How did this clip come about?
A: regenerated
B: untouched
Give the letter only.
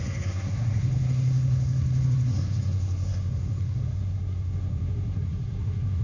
A